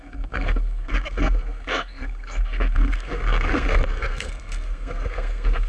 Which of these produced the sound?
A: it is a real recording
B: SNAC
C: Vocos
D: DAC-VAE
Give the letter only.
B